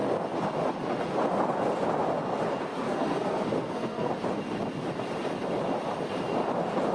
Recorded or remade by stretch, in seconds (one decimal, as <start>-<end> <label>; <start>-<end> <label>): 0.0-2.7 recorded; 2.7-4.1 remade; 4.1-6.9 recorded